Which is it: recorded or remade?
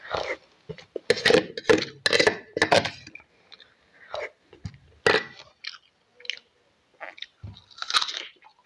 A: recorded